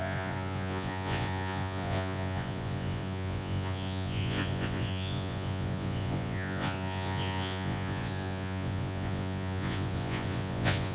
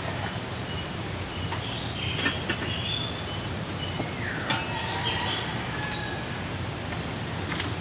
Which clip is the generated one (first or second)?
first